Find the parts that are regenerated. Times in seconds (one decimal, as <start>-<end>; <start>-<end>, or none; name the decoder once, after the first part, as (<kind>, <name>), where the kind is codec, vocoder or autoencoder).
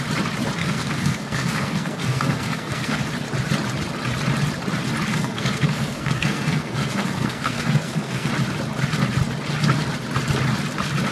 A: 0.6-3.0 (codec, SNAC); 5.1-8.3